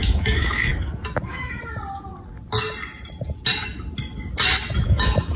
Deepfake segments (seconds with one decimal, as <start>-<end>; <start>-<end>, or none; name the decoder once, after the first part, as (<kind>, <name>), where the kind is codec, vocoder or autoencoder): 0.0-0.7 (autoencoder, DAC-VAE); 1.2-1.6; 4.8-5.4